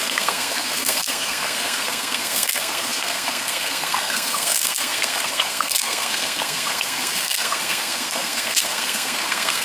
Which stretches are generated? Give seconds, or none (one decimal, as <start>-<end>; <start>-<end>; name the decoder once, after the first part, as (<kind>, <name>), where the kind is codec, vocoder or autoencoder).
0.0-9.6 (codec, SNAC)